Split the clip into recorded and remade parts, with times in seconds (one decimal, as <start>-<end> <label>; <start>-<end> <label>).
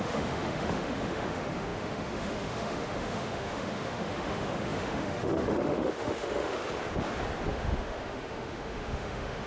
0.0-6.6 remade; 6.6-7.5 recorded; 7.5-9.5 remade